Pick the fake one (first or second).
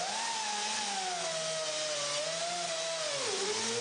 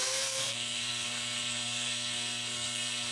second